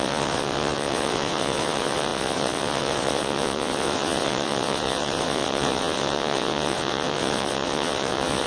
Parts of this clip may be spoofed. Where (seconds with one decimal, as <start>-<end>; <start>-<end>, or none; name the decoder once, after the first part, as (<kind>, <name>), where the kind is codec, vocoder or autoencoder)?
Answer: 0.0-8.5 (vocoder, WaveNeXt)